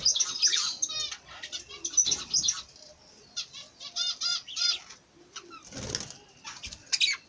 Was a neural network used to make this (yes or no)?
no